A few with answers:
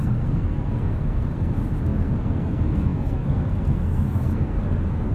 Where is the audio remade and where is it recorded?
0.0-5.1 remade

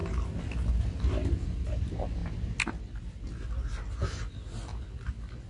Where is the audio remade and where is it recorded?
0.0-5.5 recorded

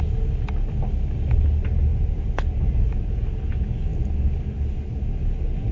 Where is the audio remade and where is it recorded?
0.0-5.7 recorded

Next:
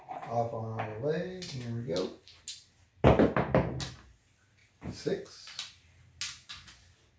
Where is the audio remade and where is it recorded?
0.0-7.2 recorded

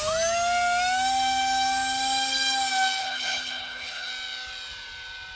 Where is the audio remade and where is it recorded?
0.0-3.0 recorded; 3.0-4.1 remade; 4.1-5.4 recorded

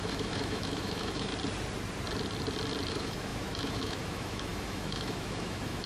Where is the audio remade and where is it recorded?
0.0-1.3 remade; 1.3-2.9 recorded; 2.9-5.9 remade